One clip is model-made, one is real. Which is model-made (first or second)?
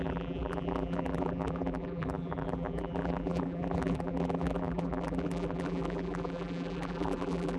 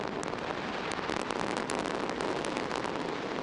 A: first